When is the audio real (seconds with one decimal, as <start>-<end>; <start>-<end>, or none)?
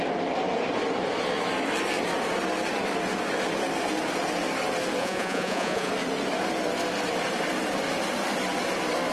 0.0-5.0; 5.9-9.1